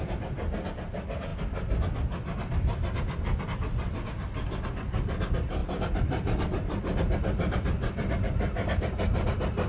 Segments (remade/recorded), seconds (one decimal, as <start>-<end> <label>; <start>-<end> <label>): 0.0-5.6 recorded; 5.6-7.2 remade; 7.2-9.7 recorded